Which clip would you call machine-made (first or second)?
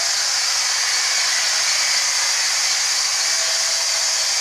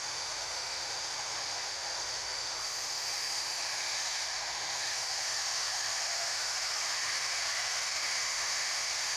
second